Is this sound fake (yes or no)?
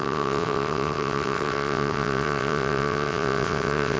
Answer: yes